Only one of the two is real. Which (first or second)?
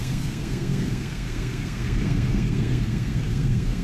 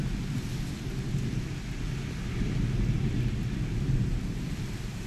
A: second